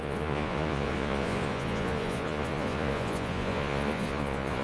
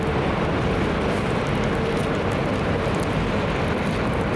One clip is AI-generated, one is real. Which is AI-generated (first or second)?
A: first